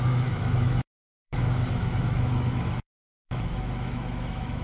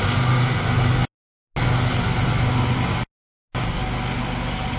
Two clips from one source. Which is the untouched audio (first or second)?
second